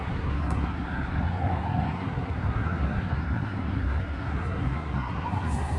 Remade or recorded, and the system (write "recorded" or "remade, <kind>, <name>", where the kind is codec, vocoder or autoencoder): remade, codec, SNAC